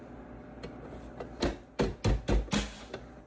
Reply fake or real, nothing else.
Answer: real